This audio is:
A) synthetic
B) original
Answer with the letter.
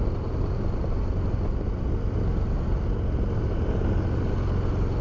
B